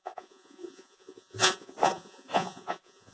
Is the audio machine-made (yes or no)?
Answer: yes